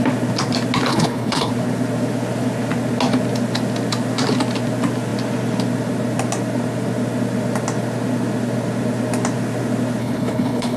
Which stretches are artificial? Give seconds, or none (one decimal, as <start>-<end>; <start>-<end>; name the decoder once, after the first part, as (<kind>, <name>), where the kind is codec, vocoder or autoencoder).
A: 0.9-1.5 (codec, HILCodec); 10.0-10.8